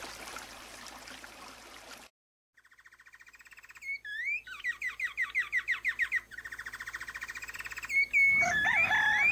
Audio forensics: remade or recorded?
recorded